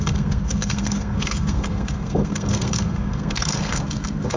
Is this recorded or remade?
remade